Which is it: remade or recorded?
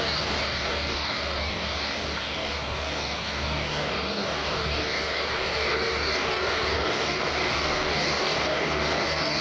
remade